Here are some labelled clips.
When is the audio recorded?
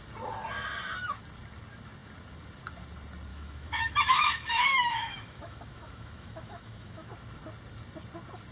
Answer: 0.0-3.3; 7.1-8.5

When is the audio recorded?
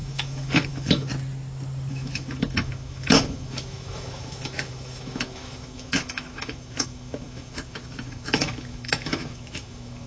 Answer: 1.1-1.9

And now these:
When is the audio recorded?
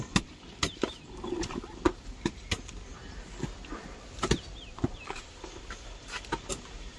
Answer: 0.0-7.0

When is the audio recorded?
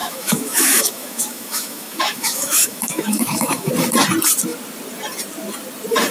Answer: 3.7-6.1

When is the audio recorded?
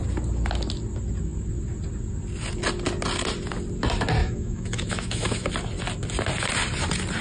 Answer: 0.0-4.2; 5.5-7.2